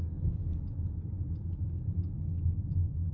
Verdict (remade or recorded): recorded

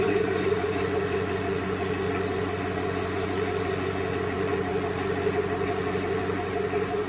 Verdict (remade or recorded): remade